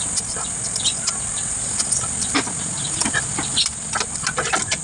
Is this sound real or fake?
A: fake